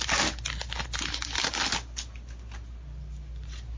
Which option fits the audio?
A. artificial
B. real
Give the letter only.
B